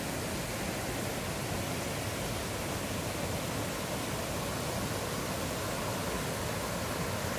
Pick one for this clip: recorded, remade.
recorded